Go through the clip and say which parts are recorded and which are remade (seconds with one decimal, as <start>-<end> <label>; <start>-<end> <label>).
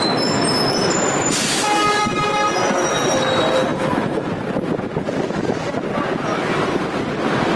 0.0-7.6 recorded